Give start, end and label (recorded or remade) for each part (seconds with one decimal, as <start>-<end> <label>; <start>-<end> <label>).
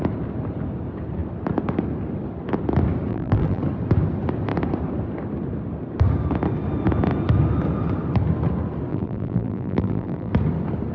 0.0-3.1 recorded; 3.1-3.6 remade; 3.6-8.9 recorded; 8.9-10.3 remade; 10.3-10.9 recorded